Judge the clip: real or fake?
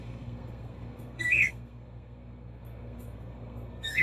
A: fake